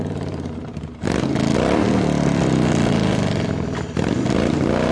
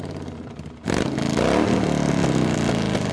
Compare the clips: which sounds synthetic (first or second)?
first